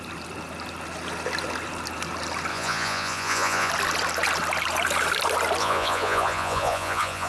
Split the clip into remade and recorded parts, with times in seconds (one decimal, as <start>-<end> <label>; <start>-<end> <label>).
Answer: 0.0-2.5 recorded; 2.5-3.7 remade; 3.7-5.6 recorded; 5.6-7.3 remade